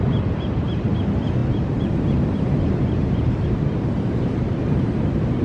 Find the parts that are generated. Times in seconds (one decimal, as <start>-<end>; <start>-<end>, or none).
1.4-4.6